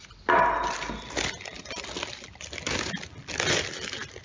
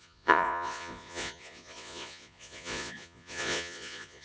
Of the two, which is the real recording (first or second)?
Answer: first